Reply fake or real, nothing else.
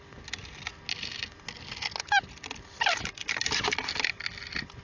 real